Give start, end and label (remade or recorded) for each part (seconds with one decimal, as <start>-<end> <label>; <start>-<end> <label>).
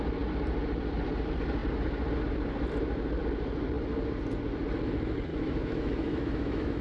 0.0-5.3 recorded; 5.3-6.8 remade